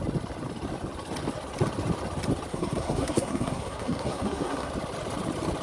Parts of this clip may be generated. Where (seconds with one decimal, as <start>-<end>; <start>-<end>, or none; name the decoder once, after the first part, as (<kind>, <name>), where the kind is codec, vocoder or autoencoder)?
2.5-4.7 (codec, SNAC)